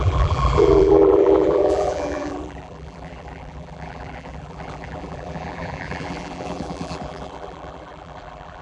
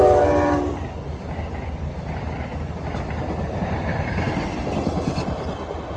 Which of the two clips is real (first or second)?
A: second